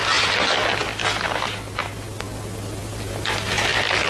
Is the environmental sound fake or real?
real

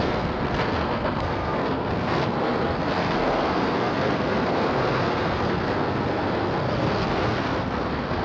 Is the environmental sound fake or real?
fake